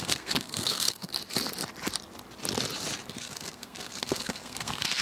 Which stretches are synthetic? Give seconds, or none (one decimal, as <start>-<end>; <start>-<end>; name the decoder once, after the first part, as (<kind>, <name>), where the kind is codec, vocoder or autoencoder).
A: 0.0-1.1 (codec, SNAC); 3.1-5.0